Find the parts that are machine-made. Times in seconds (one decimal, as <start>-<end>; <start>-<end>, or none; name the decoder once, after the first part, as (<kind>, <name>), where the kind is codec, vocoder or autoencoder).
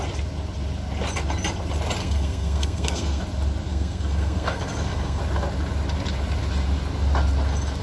2.0-3.2 (codec, SNAC); 3.7-5.2